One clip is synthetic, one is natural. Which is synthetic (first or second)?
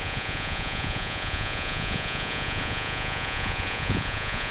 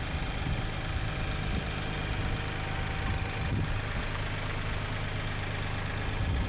first